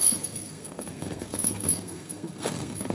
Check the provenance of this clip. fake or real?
fake